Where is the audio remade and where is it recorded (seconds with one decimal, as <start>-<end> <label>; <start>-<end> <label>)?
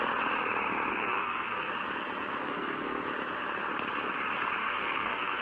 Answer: 0.0-0.9 recorded; 0.9-1.7 remade; 1.7-2.4 recorded; 2.4-3.0 remade; 3.0-4.6 recorded; 4.6-5.4 remade